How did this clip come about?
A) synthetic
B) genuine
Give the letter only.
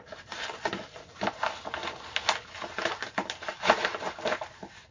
B